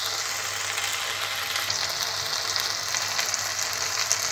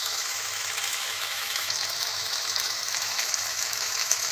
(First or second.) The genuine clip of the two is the first